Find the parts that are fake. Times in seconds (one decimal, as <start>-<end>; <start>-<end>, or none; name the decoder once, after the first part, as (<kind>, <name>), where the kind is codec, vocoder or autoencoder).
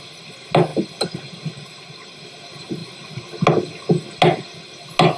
none